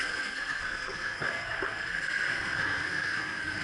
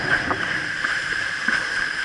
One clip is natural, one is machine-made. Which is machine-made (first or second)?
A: first